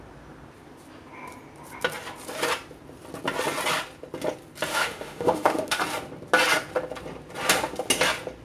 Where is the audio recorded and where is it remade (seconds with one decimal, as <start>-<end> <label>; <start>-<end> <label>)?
0.0-4.7 recorded; 4.7-5.8 remade; 5.8-8.4 recorded